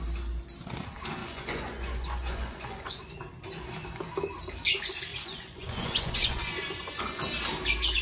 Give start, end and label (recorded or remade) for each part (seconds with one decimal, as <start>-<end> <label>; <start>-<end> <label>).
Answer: 0.0-1.2 recorded; 1.2-3.2 remade; 3.2-5.1 recorded; 5.1-7.2 remade; 7.2-8.0 recorded